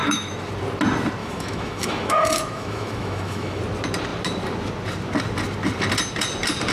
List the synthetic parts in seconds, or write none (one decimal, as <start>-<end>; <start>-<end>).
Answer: 0.0-0.5; 1.2-3.6